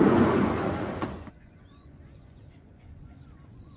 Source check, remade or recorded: remade